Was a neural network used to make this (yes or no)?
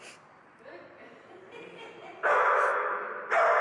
no